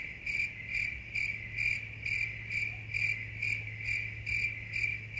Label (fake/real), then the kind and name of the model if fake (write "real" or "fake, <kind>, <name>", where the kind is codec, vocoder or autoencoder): real